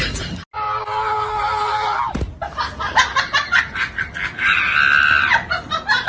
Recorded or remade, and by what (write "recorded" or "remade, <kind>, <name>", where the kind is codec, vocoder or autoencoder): recorded